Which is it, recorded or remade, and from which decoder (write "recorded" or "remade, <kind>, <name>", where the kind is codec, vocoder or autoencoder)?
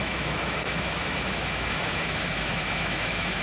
remade, autoencoder, DAC-VAE